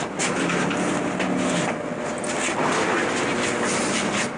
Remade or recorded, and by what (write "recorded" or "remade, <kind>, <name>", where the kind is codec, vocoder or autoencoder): recorded